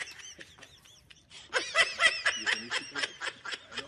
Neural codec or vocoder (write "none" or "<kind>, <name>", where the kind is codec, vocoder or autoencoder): vocoder, BigVGAN v2